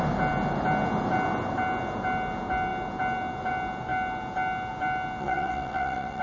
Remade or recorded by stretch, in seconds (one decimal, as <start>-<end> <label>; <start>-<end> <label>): 0.0-5.2 recorded; 5.2-6.2 remade